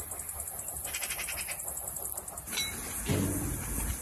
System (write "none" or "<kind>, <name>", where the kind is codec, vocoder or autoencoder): none